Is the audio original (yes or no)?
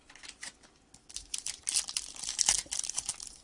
yes